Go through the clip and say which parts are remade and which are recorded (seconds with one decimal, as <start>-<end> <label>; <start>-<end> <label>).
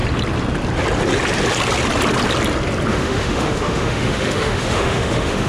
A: 0.0-2.9 recorded; 2.9-5.5 remade